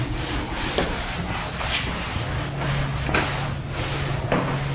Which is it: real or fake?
real